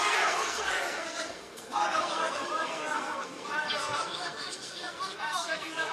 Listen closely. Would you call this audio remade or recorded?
remade